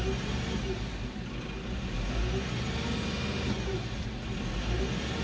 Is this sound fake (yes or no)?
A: no